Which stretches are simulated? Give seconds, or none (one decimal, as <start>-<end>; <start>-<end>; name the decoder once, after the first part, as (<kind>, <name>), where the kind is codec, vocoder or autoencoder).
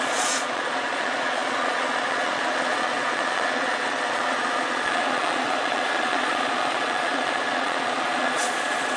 0.0-9.0 (vocoder, Vocos)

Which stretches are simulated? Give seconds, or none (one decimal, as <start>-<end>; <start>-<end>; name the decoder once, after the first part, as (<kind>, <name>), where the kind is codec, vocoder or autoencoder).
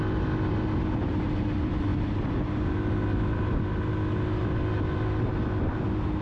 none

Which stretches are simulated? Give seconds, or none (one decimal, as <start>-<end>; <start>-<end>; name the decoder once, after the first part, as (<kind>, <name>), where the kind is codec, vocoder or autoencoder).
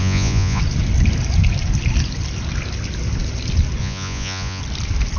0.0-0.6 (vocoder, Vocos); 3.8-4.6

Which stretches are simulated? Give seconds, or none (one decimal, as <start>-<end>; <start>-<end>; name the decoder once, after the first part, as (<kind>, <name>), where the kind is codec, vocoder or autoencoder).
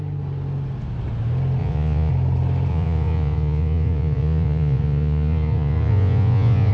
1.6-2.1 (vocoder, Vocos); 2.7-6.7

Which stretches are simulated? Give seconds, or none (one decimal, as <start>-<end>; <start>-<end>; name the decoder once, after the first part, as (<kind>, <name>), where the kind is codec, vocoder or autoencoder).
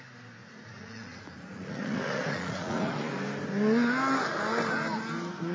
0.4-3.1 (vocoder, Vocos)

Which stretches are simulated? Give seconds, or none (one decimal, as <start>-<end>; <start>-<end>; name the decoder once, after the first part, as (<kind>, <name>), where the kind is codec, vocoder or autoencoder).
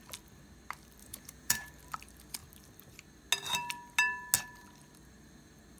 1.0-1.7 (vocoder, Vocos)